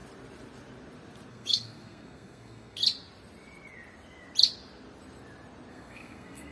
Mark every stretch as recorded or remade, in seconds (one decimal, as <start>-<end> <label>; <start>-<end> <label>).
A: 0.0-1.3 recorded; 1.3-2.8 remade; 2.8-5.7 recorded; 5.7-6.5 remade